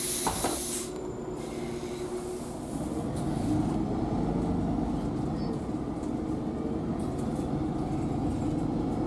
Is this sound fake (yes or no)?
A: no